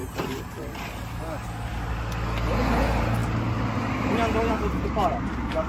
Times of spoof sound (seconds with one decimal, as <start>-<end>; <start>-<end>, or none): 0.0-0.7